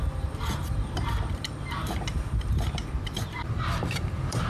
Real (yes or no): no